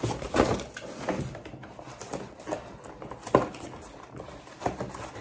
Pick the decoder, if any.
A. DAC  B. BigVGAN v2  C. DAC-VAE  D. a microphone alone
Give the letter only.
D